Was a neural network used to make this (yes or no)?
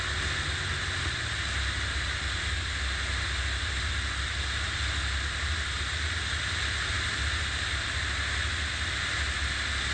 no